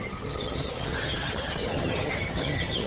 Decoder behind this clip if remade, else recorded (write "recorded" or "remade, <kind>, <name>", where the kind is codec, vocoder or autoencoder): remade, vocoder, HiFi-GAN